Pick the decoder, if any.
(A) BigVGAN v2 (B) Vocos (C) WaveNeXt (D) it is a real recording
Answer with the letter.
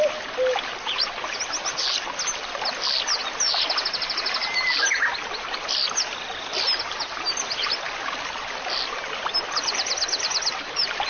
D